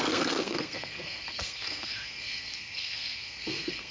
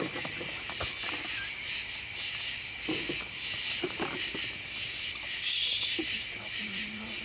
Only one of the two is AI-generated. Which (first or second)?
first